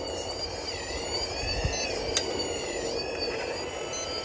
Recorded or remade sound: recorded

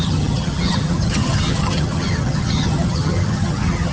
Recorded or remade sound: remade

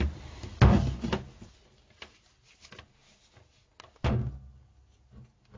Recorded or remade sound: recorded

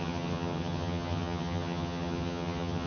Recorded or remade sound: remade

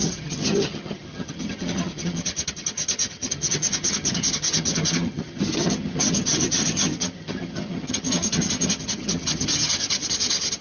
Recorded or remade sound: remade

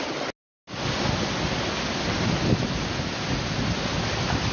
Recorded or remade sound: recorded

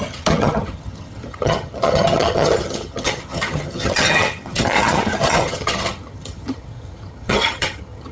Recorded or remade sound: remade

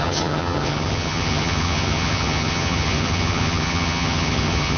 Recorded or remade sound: remade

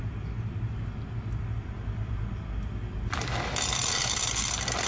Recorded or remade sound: recorded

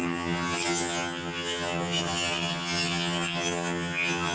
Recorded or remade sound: remade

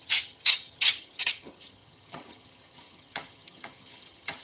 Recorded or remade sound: remade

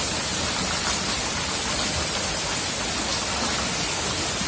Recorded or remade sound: recorded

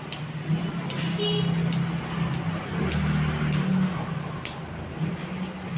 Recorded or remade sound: recorded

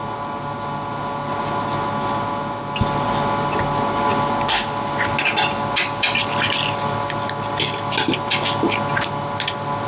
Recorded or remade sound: recorded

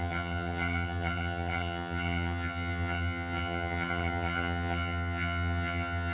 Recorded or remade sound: remade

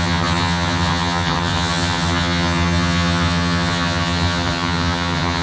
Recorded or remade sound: remade